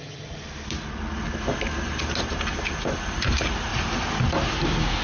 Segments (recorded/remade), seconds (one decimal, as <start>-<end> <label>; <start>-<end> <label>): 0.0-5.0 recorded